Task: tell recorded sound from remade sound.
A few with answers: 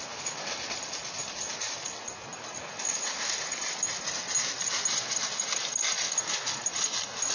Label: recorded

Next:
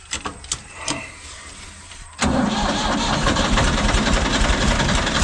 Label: remade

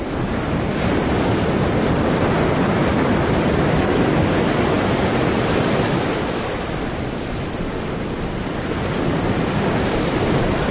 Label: recorded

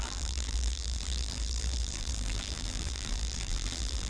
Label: remade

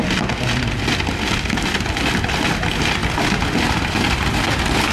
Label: recorded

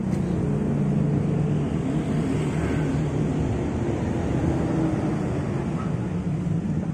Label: recorded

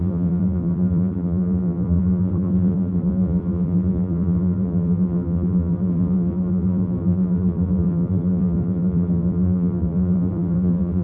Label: remade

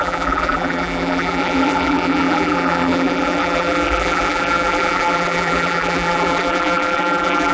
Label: remade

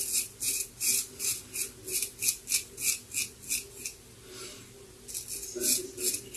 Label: recorded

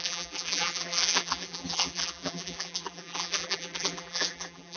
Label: remade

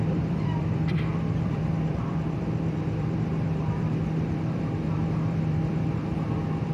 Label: remade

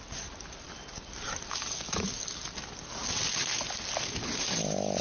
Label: recorded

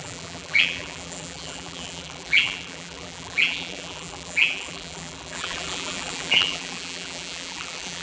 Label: remade